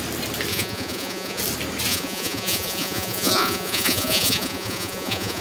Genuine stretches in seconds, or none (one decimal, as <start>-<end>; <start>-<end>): 0.0-0.5; 1.4-1.9